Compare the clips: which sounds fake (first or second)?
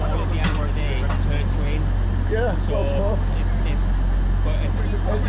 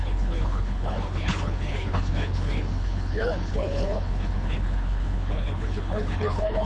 second